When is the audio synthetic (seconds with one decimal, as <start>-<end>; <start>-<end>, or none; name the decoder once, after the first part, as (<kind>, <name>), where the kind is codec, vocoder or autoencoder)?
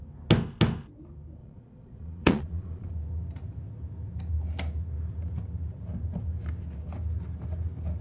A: 1.4-2.9 (vocoder, Vocos)